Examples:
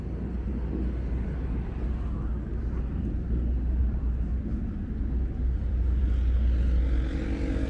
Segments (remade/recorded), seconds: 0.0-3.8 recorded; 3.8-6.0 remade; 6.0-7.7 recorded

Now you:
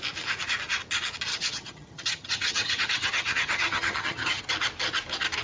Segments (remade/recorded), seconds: 0.0-1.3 recorded; 1.3-4.4 remade; 4.4-5.4 recorded